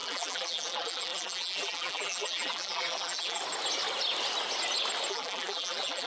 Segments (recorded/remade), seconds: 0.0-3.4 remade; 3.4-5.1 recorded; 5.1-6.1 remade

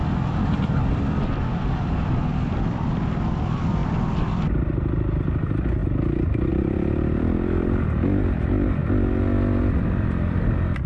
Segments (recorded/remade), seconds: 0.0-5.8 remade; 5.8-6.5 recorded; 6.5-8.8 remade; 8.8-9.6 recorded; 9.6-10.9 remade

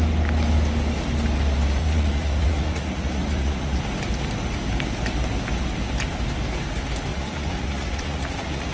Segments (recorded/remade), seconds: 0.0-1.8 recorded; 1.8-3.8 remade; 3.8-7.1 recorded; 7.1-8.7 remade

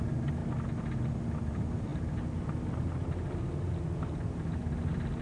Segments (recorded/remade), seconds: 0.0-5.2 recorded